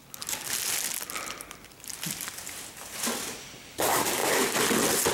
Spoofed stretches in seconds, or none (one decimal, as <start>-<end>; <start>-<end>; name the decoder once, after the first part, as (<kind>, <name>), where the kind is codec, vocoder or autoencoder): none